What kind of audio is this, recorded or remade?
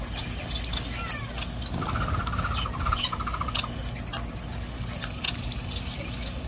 recorded